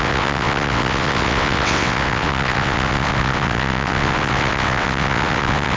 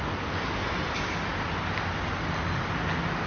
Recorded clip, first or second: second